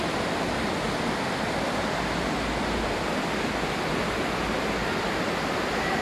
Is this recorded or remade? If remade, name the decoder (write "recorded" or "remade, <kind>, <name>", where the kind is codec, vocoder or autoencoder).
recorded